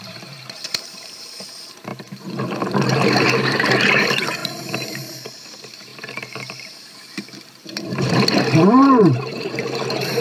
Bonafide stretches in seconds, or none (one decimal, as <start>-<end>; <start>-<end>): 5.9-7.6